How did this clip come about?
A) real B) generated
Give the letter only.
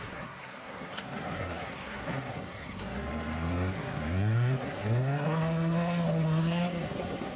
B